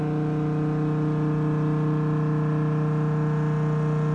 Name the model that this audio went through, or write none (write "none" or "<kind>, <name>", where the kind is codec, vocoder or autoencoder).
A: none